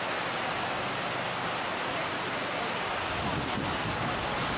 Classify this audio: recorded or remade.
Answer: recorded